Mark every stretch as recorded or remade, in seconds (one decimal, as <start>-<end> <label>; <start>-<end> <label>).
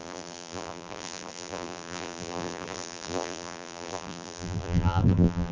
0.0-5.5 remade